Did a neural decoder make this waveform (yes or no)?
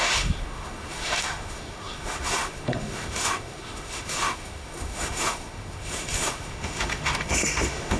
yes